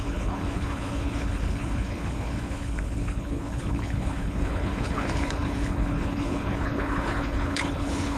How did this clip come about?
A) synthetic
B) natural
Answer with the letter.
A